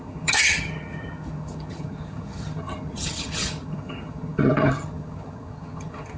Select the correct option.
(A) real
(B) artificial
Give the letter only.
B